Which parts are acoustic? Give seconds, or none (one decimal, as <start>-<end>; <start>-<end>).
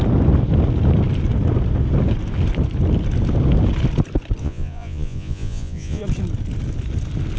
0.0-4.4; 6.0-7.4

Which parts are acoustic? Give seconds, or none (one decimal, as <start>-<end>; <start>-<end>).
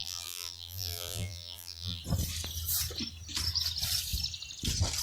2.0-5.0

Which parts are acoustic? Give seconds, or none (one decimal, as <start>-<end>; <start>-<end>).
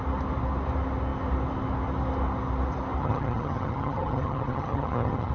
0.0-3.0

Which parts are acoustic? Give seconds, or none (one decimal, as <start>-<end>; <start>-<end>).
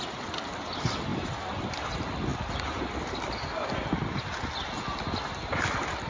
0.0-6.1